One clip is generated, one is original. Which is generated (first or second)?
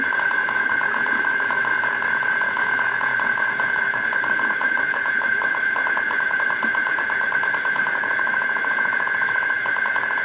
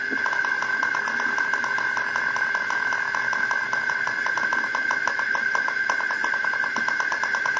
first